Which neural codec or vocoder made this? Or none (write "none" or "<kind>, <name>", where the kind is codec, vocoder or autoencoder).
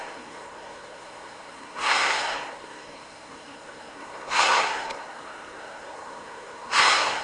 codec, SNAC